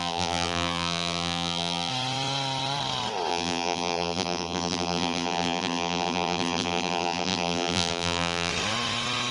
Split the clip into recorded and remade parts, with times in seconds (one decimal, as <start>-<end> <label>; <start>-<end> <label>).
0.0-1.9 remade; 1.9-3.3 recorded; 3.3-8.5 remade; 8.5-9.3 recorded